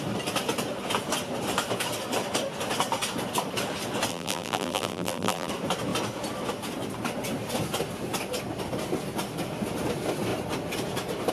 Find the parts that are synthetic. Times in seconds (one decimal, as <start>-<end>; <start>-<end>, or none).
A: 4.1-5.5